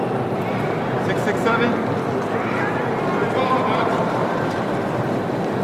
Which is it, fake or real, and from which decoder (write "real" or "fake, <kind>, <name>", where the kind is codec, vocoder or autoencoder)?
real